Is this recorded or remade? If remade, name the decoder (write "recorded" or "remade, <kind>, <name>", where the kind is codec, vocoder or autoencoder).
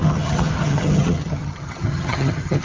remade, vocoder, HiFi-GAN